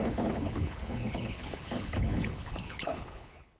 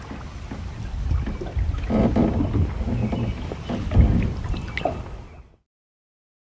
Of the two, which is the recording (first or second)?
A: second